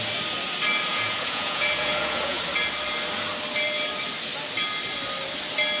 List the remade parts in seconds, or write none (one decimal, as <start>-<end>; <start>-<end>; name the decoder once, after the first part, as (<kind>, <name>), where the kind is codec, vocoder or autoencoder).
0.9-2.4 (vocoder, Vocos)